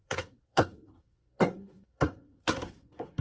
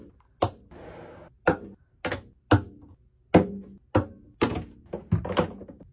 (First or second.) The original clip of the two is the second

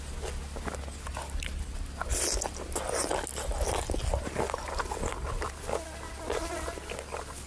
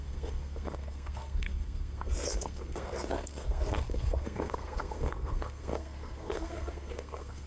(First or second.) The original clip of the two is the first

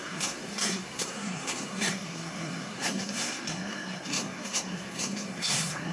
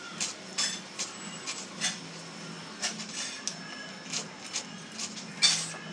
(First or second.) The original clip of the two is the second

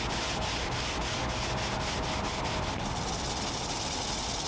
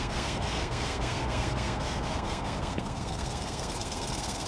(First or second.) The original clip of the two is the first